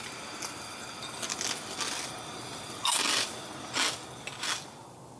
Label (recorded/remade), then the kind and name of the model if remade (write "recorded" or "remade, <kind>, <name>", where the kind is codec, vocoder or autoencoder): recorded